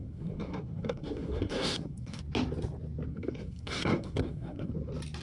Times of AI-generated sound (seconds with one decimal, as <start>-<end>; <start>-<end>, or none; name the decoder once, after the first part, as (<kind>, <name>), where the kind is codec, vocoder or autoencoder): 0.0-2.2 (codec, SNAC); 3.1-4.7